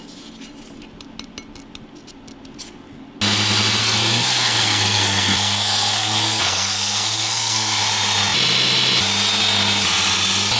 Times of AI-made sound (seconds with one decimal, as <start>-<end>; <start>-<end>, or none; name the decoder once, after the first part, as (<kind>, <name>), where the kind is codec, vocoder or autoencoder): 3.8-7.8 (codec, SNAC)